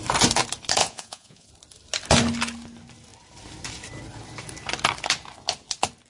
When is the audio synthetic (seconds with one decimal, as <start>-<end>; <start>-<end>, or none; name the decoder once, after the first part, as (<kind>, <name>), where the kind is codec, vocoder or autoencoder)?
0.8-1.5 (vocoder, Vocos)